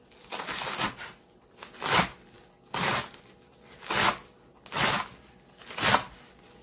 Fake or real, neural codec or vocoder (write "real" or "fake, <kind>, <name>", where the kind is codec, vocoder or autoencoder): real